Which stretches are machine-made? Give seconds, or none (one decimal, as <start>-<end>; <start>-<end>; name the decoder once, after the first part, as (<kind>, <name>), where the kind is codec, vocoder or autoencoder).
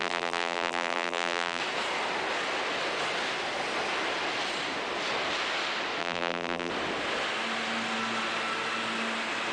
0.0-1.6 (vocoder, BigVGAN v2); 6.0-6.7